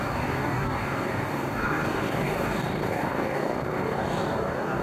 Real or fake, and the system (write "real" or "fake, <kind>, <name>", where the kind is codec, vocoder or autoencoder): fake, codec, DAC